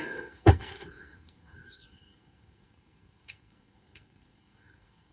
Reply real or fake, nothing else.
fake